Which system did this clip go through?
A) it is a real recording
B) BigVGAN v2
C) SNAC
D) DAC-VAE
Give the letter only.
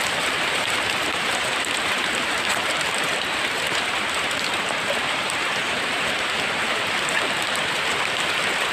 B